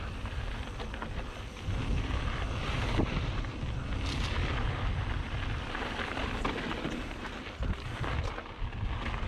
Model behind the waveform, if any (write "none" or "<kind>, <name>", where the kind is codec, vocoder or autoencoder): none